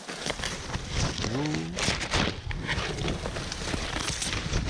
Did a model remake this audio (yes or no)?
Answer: no